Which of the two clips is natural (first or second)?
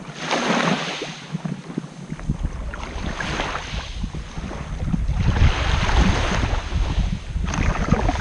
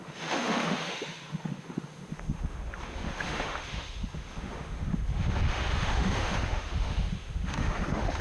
first